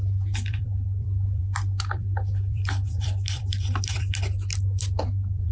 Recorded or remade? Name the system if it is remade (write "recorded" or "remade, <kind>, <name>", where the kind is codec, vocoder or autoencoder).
remade, vocoder, BigVGAN v2